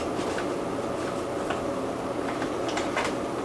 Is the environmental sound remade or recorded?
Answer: recorded